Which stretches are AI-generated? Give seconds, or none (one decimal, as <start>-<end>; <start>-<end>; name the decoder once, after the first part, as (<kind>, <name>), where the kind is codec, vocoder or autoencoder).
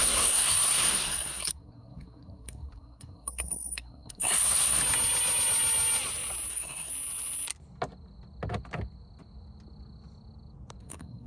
0.0-4.8 (codec, SNAC); 6.5-6.9; 10.8-11.3